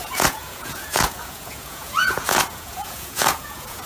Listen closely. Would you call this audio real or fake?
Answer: fake